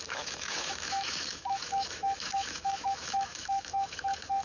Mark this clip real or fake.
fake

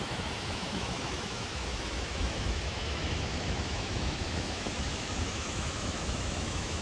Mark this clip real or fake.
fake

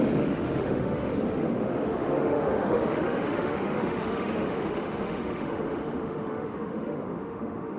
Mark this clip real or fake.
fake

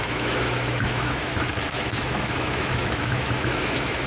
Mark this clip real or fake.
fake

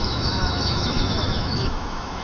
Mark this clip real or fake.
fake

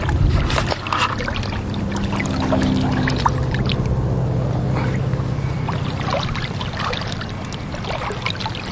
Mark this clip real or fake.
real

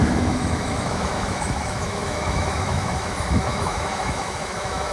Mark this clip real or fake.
fake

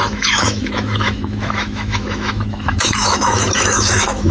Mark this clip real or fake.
fake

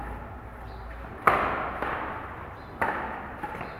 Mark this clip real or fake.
real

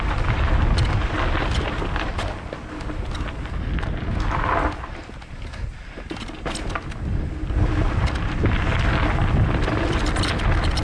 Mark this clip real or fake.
real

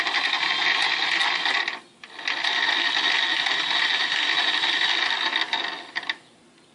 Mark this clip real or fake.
real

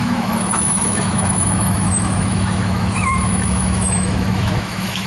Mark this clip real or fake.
fake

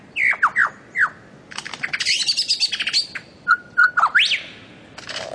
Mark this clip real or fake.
real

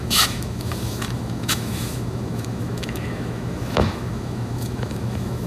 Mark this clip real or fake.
fake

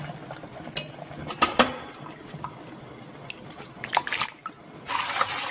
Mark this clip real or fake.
real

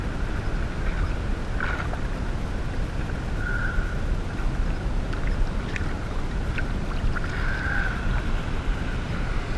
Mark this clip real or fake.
real